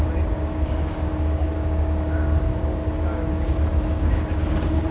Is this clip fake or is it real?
fake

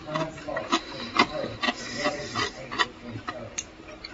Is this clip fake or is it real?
real